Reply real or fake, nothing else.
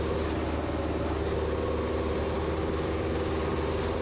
real